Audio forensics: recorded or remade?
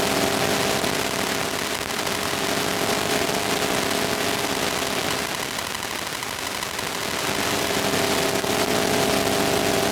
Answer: recorded